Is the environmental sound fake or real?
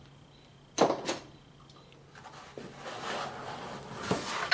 real